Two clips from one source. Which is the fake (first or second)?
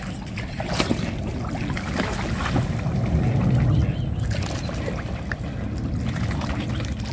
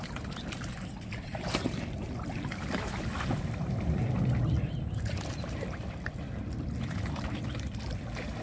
second